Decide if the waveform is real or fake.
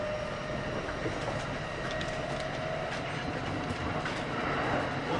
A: real